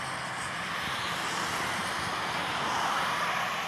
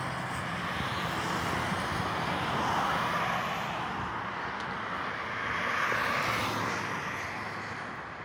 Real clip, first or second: second